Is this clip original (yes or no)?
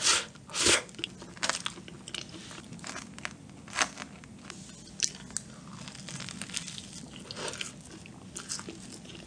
yes